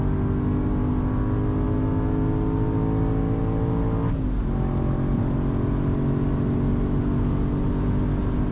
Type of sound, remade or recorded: recorded